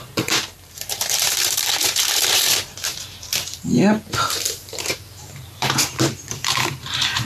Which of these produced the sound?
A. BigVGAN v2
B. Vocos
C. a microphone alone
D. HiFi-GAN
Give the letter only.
A